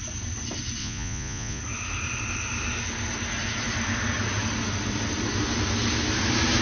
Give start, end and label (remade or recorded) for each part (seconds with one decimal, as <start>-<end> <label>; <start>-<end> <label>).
0.0-0.8 recorded; 0.8-1.6 remade; 1.6-6.6 recorded